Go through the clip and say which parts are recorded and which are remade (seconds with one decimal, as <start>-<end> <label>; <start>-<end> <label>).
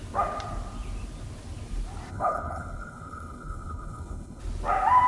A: 0.0-2.1 recorded; 2.1-4.4 remade; 4.4-5.1 recorded